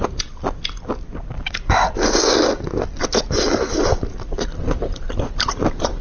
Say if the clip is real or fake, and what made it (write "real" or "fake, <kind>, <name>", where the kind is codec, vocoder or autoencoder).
real